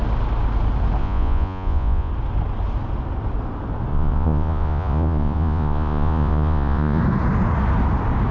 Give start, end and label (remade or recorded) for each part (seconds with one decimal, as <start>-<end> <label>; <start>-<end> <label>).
0.0-1.0 recorded; 1.0-2.1 remade; 2.1-3.9 recorded; 3.9-7.0 remade; 7.0-8.3 recorded

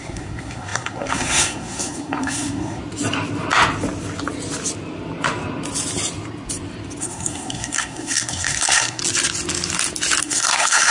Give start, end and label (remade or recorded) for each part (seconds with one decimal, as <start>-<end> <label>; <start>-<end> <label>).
0.0-2.8 remade; 2.8-7.0 recorded; 7.0-9.0 remade; 9.0-10.2 recorded; 10.2-10.9 remade

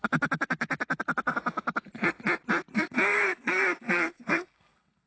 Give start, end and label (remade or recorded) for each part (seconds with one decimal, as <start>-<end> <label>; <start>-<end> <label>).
0.0-2.7 recorded; 2.7-5.1 remade